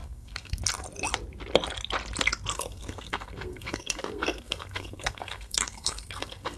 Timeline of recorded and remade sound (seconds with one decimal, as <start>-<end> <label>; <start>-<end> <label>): 0.0-0.6 remade; 0.6-2.5 recorded; 2.5-6.6 remade